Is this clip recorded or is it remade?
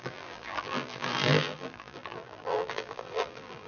remade